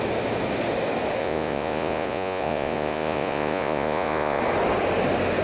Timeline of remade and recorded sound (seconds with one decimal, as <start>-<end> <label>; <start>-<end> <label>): 0.0-1.2 recorded; 1.2-4.4 remade; 4.4-5.4 recorded